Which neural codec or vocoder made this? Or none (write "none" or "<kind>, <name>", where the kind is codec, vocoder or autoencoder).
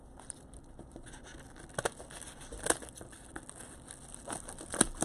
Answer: none